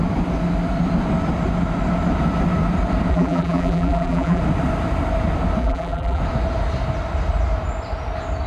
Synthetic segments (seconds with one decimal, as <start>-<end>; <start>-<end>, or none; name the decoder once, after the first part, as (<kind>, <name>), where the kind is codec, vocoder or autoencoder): 3.1-4.4 (vocoder, BigVGAN v2); 5.6-6.2